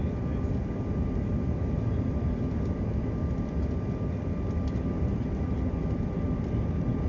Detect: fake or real real